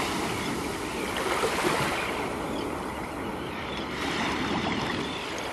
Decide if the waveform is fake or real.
real